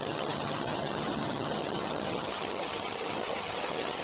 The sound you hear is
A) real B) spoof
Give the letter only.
B